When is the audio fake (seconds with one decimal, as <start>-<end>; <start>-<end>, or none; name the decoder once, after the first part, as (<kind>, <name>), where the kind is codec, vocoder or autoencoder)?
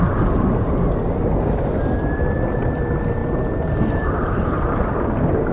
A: 3.2-4.7 (vocoder, BigVGAN v2)